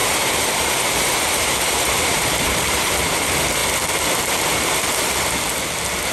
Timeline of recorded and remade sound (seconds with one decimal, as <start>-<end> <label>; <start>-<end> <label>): 0.0-2.9 remade; 2.9-6.1 recorded